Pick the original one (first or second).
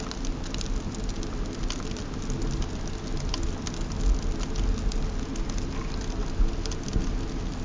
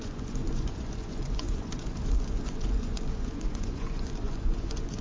first